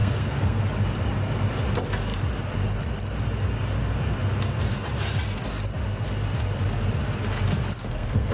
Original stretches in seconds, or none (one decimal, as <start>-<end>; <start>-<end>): 0.6-7.8